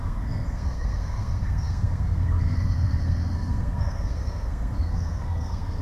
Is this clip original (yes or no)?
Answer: no